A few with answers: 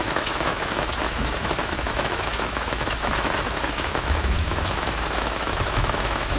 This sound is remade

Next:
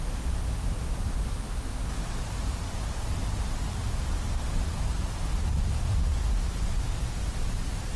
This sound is recorded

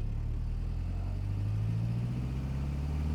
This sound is recorded